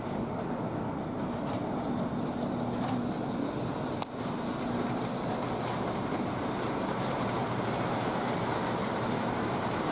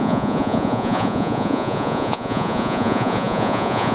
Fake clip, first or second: second